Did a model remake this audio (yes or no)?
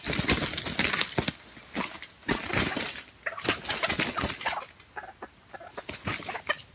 no